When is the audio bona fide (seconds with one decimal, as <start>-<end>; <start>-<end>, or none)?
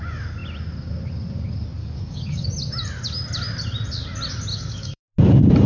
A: 0.0-1.8; 2.5-4.5; 5.0-5.7